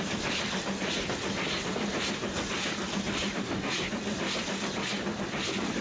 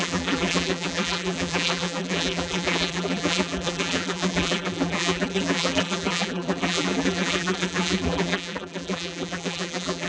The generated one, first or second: second